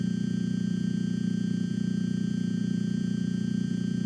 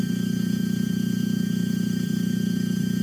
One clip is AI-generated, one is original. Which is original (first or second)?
first